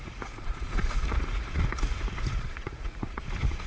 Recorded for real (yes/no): no